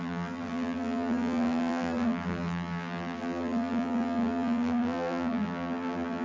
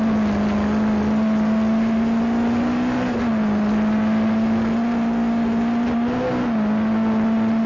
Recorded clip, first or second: second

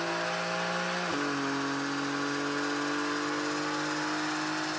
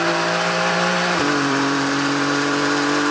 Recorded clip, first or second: first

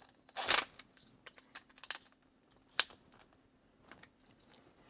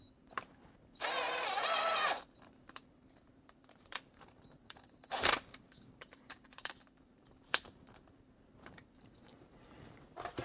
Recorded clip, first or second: first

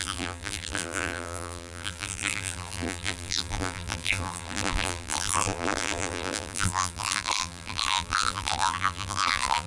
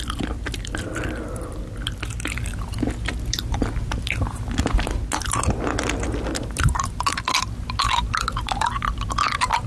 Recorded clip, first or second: second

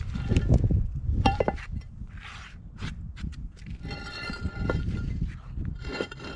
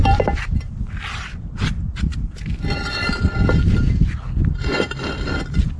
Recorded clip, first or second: second